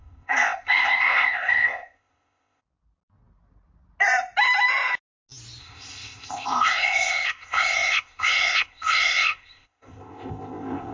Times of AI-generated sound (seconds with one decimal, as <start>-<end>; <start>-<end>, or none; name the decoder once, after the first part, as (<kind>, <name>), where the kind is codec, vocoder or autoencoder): 0.0-2.6 (codec, ZipCodec); 5.6-10.9